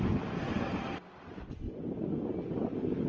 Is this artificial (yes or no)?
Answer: no